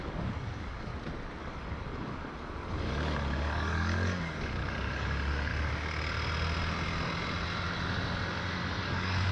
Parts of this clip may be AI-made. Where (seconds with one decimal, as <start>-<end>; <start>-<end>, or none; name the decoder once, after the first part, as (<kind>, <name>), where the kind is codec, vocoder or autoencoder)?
0.0-0.9 (codec, DAC); 1.4-5.5; 8.8-9.3